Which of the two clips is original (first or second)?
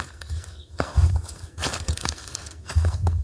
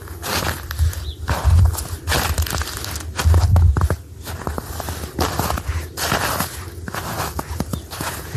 second